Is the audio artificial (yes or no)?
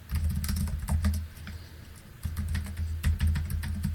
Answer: no